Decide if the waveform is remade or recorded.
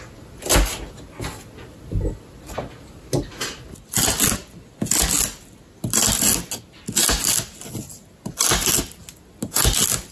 recorded